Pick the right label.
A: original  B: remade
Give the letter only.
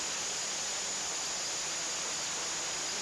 A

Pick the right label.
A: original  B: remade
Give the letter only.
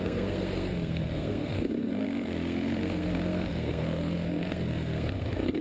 B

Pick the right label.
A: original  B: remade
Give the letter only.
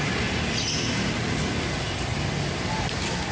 A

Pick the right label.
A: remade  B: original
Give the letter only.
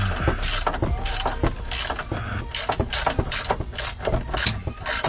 B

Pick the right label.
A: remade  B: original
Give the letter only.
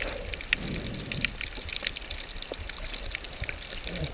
B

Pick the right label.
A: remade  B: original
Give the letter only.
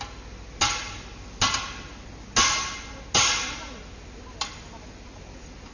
B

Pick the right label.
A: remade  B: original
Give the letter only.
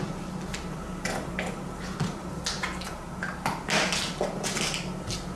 B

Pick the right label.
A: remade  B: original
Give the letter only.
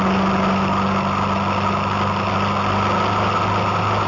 B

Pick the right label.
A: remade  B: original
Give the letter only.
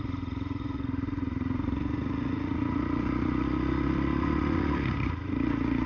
A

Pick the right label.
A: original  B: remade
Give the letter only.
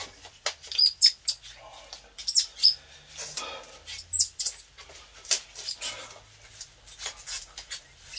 A